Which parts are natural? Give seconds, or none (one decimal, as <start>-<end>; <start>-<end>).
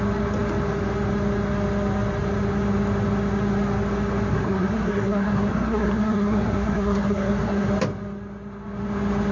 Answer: 0.0-4.3; 7.7-9.3